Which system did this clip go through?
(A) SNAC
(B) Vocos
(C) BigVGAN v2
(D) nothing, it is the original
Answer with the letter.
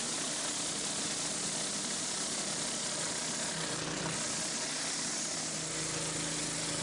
D